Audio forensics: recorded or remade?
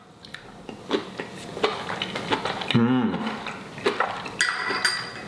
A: recorded